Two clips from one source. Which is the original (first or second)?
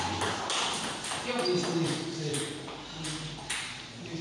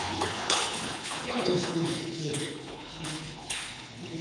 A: first